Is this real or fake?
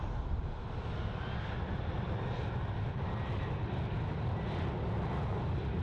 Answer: real